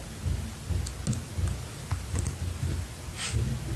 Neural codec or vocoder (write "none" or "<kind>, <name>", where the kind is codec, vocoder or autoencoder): none